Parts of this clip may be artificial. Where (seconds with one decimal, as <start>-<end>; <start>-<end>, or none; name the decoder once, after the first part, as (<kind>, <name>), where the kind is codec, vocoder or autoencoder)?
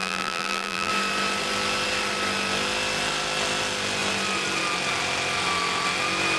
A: 0.0-0.9 (vocoder, BigVGAN v2)